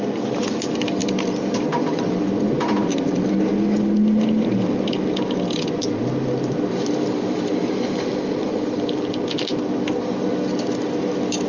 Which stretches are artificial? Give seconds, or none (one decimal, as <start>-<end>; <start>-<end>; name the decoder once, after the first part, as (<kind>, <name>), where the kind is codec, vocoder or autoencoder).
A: 6.7-9.0 (vocoder, BigVGAN v2)